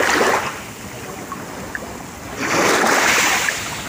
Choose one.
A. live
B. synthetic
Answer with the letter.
A